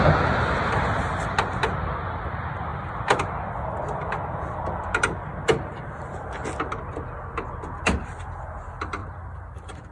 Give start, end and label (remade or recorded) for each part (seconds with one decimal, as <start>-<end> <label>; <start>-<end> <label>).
0.0-2.7 recorded; 2.7-6.1 remade; 6.1-9.0 recorded; 9.0-9.9 remade